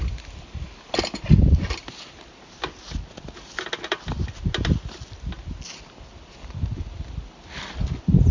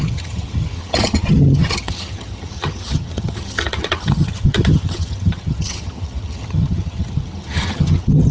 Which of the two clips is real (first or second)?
first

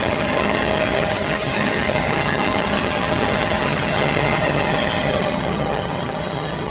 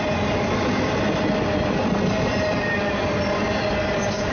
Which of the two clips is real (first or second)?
second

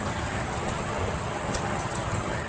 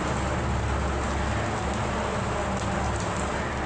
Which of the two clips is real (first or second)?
second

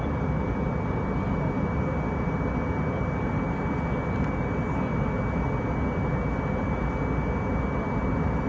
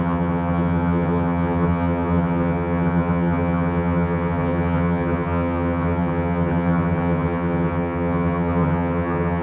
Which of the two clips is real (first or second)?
first